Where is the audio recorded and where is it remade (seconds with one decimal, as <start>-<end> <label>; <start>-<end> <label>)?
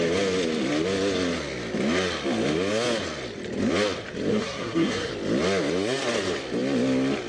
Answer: 0.0-4.3 recorded; 4.3-5.1 remade; 5.1-7.3 recorded